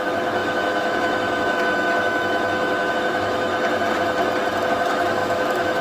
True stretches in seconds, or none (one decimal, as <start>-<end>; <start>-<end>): 3.5-4.7